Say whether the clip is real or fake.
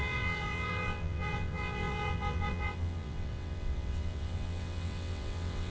fake